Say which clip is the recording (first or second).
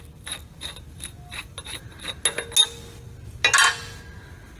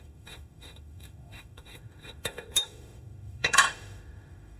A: first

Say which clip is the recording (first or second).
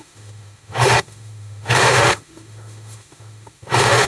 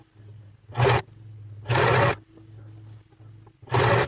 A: second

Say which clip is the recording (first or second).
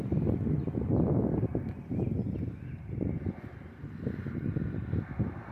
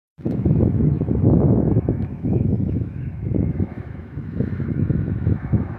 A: first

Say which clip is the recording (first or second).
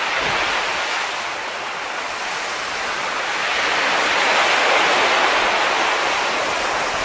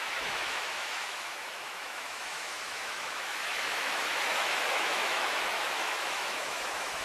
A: first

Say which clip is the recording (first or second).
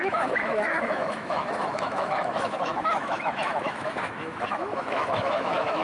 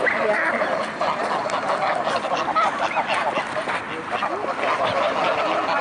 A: second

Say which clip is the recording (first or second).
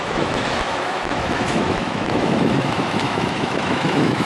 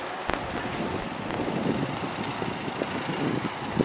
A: second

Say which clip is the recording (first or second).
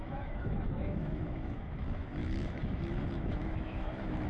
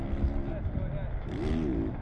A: second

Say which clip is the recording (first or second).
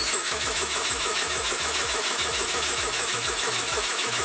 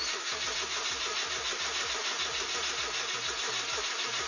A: second